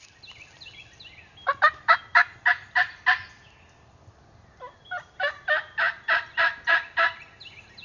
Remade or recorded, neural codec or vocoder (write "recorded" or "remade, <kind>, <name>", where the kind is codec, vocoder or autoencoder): recorded